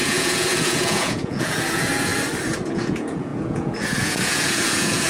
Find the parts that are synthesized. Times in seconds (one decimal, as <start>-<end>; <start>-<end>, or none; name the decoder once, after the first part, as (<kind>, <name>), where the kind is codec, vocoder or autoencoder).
0.0-2.1 (vocoder, Vocos); 2.7-5.1